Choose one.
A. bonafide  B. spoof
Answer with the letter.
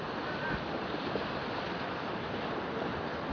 A